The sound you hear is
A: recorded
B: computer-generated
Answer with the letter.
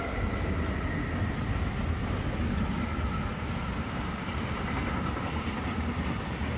A